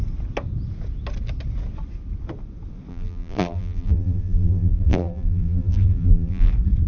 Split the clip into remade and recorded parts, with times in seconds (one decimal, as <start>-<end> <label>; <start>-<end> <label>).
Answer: 0.0-2.9 recorded; 2.9-6.5 remade; 6.5-6.9 recorded